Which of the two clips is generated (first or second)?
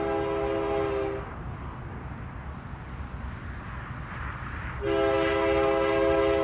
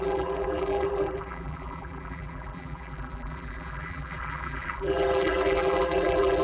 second